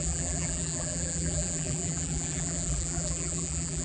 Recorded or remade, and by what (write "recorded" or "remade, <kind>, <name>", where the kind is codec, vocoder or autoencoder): remade, vocoder, BigVGAN v2